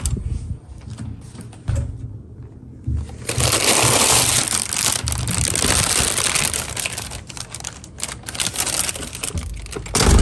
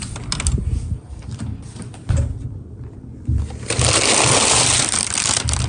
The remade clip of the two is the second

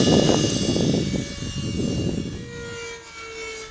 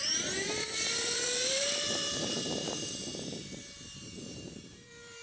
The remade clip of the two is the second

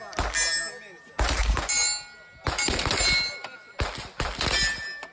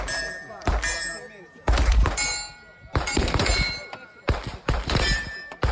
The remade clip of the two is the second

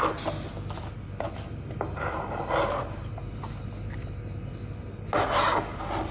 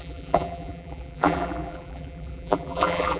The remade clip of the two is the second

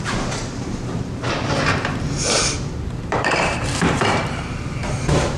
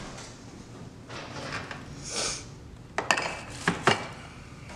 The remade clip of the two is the first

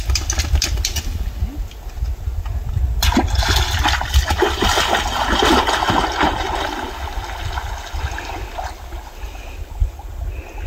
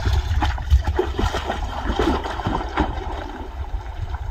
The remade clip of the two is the second